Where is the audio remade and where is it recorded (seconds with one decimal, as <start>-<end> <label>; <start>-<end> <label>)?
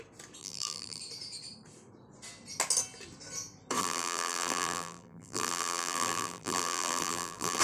0.0-0.4 recorded; 0.4-1.0 remade; 1.0-3.8 recorded; 3.8-7.6 remade